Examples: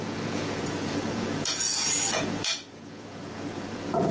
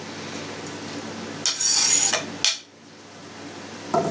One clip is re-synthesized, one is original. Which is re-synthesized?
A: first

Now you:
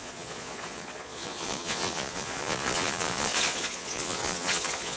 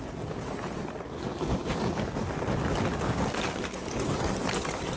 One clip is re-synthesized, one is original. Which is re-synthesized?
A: first